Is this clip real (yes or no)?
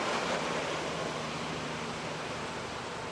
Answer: yes